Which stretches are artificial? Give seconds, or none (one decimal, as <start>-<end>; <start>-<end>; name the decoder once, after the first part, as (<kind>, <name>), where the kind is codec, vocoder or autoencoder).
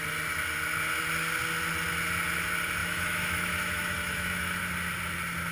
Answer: 2.8-4.6 (autoencoder, DAC-VAE)